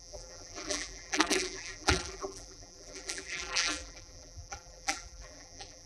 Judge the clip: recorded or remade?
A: remade